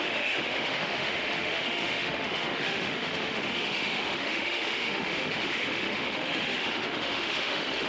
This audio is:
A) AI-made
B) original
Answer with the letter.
A